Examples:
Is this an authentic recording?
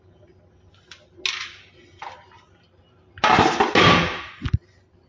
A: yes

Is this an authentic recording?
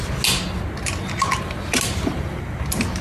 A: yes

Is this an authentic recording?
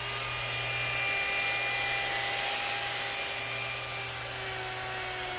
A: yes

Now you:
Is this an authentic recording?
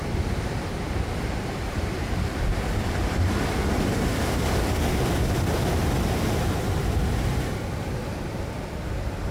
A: yes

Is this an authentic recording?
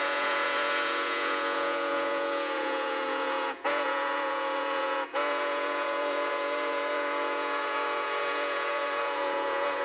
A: no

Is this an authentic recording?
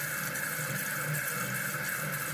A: yes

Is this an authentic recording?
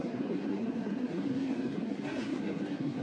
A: no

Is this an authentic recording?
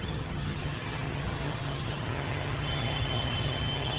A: no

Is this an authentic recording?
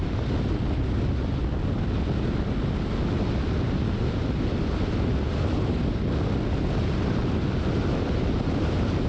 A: yes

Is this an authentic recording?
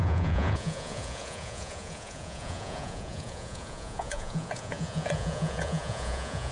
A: no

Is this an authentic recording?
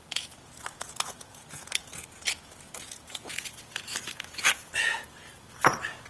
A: no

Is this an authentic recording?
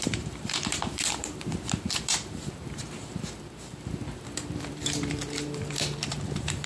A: no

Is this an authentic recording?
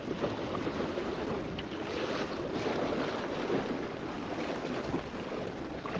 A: yes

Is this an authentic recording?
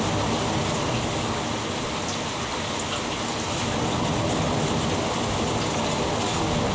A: yes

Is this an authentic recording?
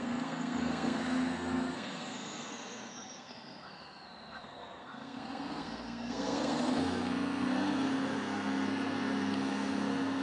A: no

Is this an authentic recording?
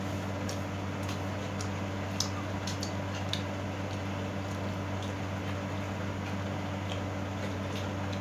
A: yes